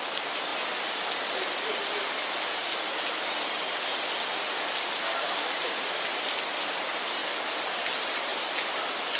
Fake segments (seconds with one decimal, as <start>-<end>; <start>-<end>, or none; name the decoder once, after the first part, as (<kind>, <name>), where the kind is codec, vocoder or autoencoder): 0.0-0.5 (vocoder, BigVGAN v2); 5.5-7.2; 7.9-9.2